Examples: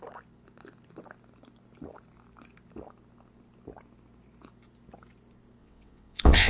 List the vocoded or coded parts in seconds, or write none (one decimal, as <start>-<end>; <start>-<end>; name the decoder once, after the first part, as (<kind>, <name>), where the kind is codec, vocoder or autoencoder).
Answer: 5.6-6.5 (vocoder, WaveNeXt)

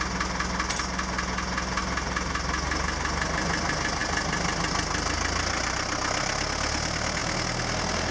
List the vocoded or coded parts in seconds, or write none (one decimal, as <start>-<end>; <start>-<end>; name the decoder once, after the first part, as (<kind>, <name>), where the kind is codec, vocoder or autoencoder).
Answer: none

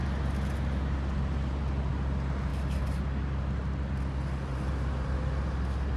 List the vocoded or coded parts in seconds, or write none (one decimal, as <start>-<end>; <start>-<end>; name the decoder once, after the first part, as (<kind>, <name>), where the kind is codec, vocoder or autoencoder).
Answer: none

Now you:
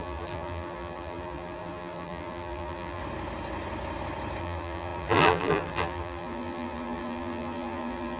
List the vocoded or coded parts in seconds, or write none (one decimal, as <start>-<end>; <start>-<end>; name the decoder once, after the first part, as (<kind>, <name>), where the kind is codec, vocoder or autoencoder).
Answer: 0.0-3.0 (vocoder, BigVGAN v2); 4.4-8.2

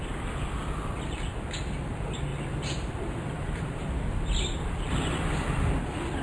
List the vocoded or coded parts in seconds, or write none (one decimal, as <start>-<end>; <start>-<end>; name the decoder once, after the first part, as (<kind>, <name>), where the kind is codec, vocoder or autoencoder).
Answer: 2.3-4.7 (vocoder, BigVGAN v2)